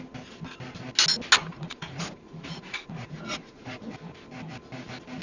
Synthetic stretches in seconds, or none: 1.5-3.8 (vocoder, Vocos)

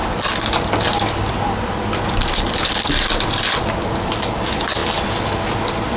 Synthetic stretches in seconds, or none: none

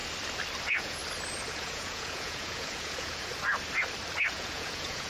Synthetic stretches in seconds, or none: 0.6-1.0 (vocoder, Vocos); 1.5-3.3; 4.3-5.1

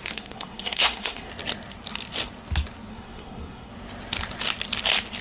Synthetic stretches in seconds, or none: 0.0-1.3 (codec, SNAC); 2.9-3.7

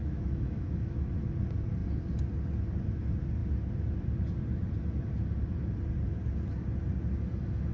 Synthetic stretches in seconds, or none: 0.0-1.1 (autoencoder, DAC-VAE)

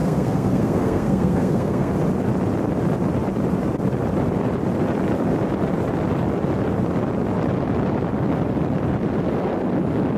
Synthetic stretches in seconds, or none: 0.0-1.9 (codec, SNAC)

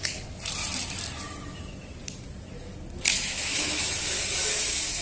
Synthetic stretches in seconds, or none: 3.1-5.0 (autoencoder, DAC-VAE)

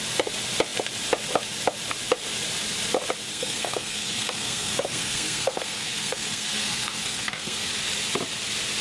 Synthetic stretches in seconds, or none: 3.3-7.7 (codec, SNAC)